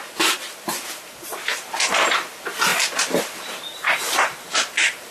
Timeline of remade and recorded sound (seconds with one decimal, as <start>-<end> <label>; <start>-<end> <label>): 0.0-5.1 remade